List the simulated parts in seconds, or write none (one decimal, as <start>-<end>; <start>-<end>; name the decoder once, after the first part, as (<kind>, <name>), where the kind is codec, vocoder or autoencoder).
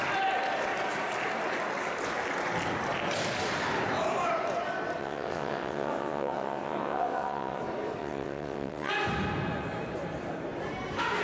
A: 5.0-7.6 (vocoder, WaveNeXt); 8.0-8.9